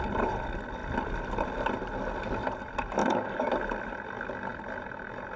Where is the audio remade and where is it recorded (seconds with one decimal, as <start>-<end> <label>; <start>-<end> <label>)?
0.0-3.0 recorded; 3.0-3.5 remade; 3.5-5.4 recorded